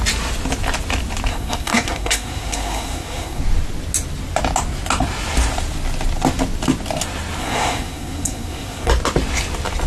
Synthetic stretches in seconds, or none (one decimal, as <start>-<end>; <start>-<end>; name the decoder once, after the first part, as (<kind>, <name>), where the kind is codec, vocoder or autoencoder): 1.3-3.4 (codec, SNAC); 7.4-8.9